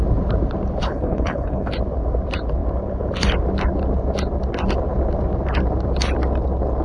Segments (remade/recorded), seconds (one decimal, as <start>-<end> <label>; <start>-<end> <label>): 0.0-0.8 recorded; 0.8-1.7 remade; 1.7-6.8 recorded